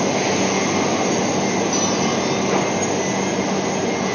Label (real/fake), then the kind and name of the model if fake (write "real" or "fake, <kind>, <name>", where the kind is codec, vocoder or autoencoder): real